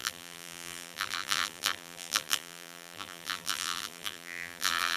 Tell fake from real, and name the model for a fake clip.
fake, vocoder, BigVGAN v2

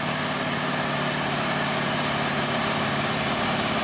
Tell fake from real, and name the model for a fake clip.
fake, vocoder, BigVGAN v2